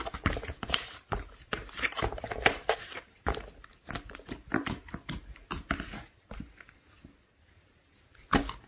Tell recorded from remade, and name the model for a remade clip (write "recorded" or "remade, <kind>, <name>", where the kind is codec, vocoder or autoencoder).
remade, vocoder, BigVGAN v2